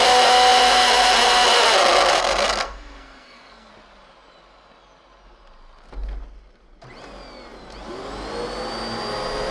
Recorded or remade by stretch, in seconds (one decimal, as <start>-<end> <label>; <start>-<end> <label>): 0.0-2.1 recorded; 2.1-3.7 remade; 3.7-9.5 recorded